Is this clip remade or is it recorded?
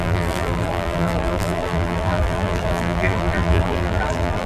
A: remade